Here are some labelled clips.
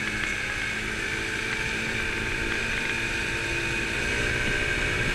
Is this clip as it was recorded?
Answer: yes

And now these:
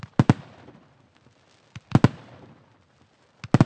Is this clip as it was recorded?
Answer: yes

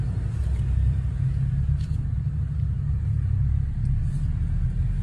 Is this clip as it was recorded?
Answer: no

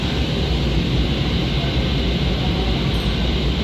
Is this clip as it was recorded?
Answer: yes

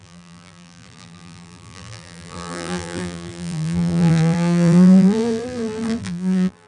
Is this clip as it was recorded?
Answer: no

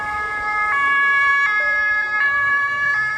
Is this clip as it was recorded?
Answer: no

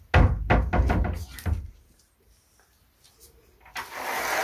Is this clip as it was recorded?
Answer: yes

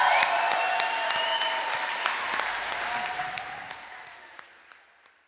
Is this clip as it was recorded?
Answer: yes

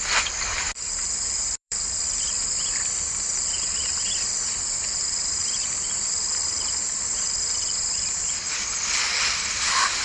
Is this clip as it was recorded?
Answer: no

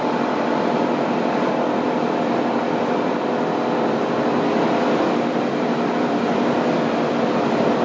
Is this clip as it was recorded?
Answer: no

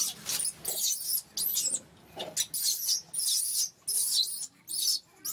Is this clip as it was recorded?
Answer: yes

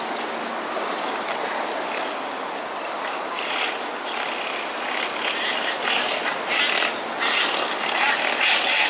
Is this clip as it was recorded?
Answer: yes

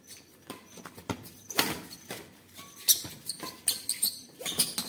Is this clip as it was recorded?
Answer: yes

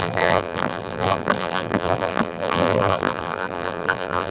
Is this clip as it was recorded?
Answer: no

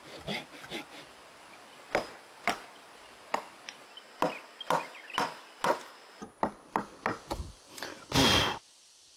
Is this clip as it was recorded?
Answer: yes